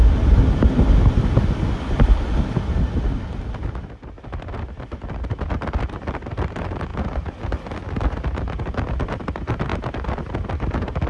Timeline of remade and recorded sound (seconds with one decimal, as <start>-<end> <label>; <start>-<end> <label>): 0.0-4.4 recorded; 4.4-9.7 remade; 9.7-11.1 recorded